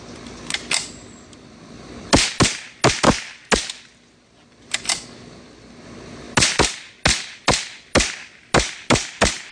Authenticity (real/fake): real